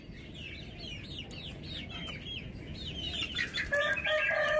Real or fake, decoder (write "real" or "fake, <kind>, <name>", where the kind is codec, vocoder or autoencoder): real